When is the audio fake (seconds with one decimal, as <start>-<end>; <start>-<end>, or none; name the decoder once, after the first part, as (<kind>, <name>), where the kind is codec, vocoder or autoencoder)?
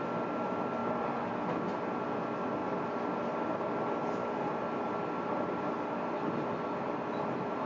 none